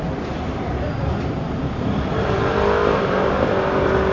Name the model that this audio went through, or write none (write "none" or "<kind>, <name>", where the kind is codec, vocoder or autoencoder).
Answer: none